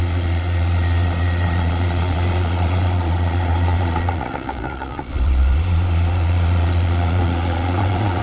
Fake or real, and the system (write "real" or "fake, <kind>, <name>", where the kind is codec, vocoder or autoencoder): fake, vocoder, Vocos